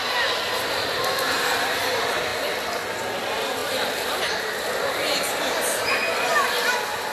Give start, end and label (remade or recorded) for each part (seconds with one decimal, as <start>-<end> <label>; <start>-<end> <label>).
0.0-6.3 recorded; 6.3-7.1 remade